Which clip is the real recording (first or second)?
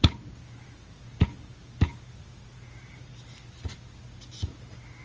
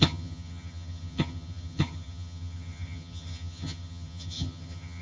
first